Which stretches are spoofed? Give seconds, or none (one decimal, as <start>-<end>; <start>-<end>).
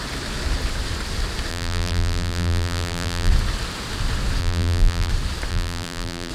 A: 1.5-3.3; 4.4-5.1; 5.5-6.3